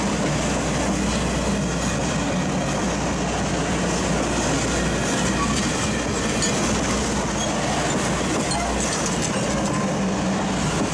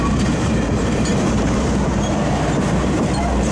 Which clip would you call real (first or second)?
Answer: first